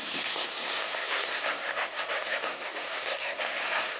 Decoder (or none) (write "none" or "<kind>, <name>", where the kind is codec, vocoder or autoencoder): codec, SNAC